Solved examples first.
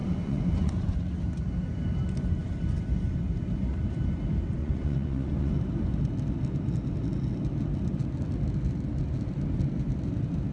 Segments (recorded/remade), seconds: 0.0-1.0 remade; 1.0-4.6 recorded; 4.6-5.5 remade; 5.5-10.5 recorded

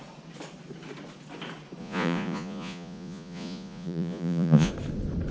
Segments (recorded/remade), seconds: 0.0-1.8 recorded; 1.8-4.7 remade; 4.7-5.3 recorded

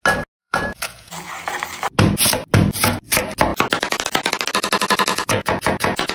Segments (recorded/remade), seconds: 0.0-0.4 recorded; 0.4-1.3 remade; 1.3-5.1 recorded; 5.1-6.1 remade

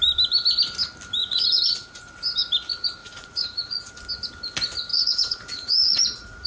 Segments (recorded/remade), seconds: 0.0-1.2 recorded; 1.2-2.1 remade; 2.1-3.0 recorded; 3.0-3.9 remade; 3.9-4.9 recorded; 4.9-6.5 remade